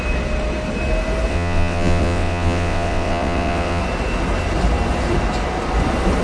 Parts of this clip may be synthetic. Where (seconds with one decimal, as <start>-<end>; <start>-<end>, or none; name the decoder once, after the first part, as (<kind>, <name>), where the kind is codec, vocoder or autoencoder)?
1.3-3.8 (vocoder, WaveNeXt)